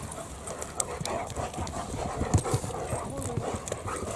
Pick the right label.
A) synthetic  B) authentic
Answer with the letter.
B